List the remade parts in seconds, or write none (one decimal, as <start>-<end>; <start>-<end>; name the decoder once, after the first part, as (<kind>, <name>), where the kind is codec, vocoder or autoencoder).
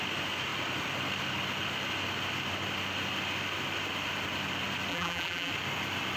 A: 4.9-5.5 (vocoder, BigVGAN v2)